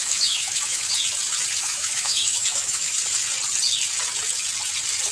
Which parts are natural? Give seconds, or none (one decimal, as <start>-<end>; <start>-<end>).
0.9-1.6; 3.0-5.1